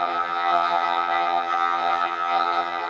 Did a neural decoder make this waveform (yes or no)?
yes